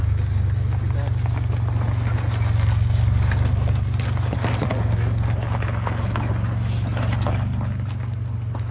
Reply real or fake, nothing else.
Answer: real